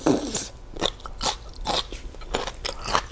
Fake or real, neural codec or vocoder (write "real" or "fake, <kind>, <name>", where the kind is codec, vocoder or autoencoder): real